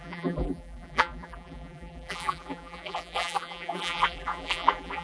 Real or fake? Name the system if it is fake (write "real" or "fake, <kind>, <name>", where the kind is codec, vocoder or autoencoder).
fake, vocoder, BigVGAN v2